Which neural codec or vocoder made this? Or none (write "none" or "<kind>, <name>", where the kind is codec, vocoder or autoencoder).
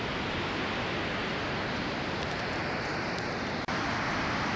none